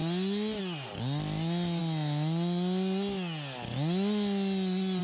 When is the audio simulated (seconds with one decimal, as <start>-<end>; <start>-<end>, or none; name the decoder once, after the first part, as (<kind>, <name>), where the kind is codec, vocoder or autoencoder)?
none